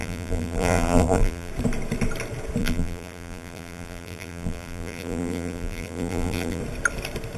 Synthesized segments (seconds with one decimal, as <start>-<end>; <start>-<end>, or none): 0.0-1.5; 2.6-6.6